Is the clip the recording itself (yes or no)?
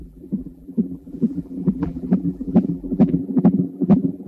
no